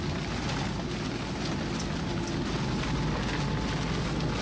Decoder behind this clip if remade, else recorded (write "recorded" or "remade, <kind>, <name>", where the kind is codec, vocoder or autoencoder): recorded